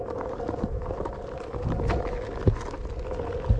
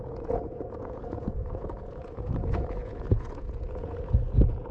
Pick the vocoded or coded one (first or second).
second